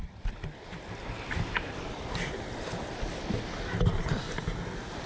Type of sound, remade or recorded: recorded